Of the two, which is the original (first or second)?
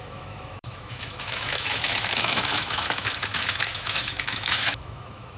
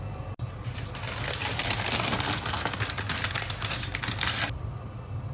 second